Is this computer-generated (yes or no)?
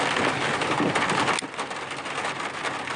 no